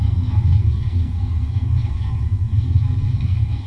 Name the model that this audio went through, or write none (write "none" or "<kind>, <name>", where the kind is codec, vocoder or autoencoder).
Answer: codec, SNAC